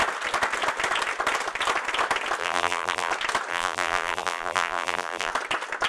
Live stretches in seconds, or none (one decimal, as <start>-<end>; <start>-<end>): 0.0-2.4; 3.1-3.5; 5.3-5.9